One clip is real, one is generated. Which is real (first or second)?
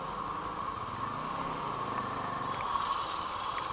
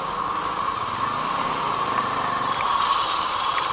first